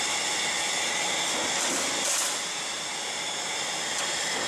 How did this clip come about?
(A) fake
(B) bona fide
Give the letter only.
B